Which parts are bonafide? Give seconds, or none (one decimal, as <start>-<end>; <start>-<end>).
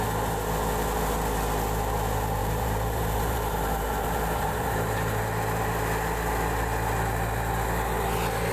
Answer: 0.0-2.4; 5.2-8.5